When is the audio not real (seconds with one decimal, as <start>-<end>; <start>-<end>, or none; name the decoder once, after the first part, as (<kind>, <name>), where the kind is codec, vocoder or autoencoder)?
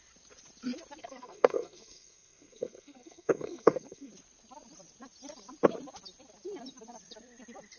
1.0-4.1 (codec, SNAC)